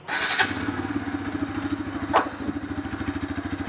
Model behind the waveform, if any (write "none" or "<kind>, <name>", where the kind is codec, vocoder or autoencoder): none